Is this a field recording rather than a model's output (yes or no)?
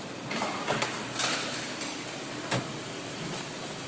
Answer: yes